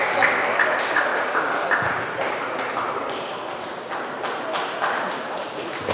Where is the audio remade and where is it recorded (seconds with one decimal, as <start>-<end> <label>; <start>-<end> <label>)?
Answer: 0.0-5.9 recorded